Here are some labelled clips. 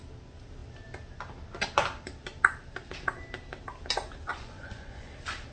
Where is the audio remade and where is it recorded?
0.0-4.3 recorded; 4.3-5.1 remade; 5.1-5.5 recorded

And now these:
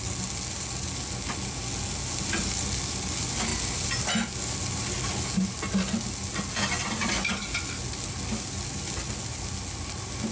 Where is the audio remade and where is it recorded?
0.0-10.3 recorded

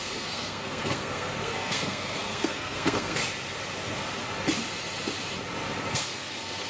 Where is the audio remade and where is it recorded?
0.0-3.2 remade; 3.2-5.9 recorded; 5.9-6.7 remade

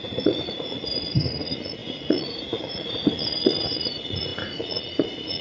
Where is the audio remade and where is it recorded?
0.0-5.4 remade

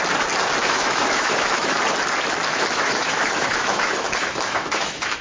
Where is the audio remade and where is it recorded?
0.0-0.6 recorded; 0.6-1.8 remade; 1.8-2.5 recorded; 2.5-5.2 remade